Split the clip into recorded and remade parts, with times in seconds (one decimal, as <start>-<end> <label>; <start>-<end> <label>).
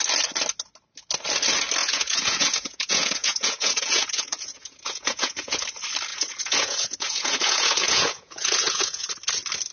0.0-1.8 recorded; 1.8-5.6 remade; 5.6-6.1 recorded; 6.1-9.1 remade; 9.1-9.7 recorded